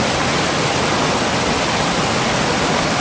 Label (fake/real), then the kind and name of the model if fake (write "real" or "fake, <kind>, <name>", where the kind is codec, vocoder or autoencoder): real